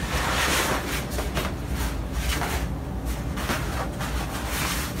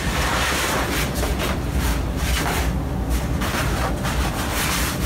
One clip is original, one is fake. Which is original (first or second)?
first